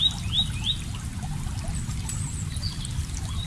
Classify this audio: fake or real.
real